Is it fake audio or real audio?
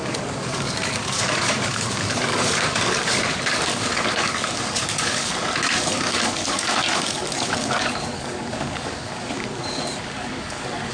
fake